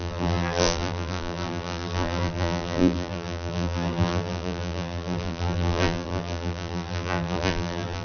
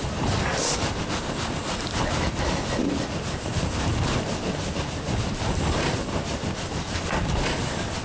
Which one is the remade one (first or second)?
first